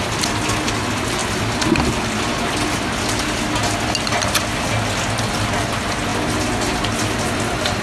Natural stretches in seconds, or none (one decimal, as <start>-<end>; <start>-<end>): 0.0-7.8